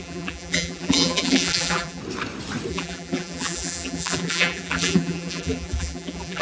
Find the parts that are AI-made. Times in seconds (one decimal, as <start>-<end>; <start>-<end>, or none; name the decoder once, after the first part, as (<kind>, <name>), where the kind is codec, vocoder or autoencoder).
0.0-2.0 (vocoder, BigVGAN v2); 2.7-6.4